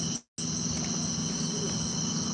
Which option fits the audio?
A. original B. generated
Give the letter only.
A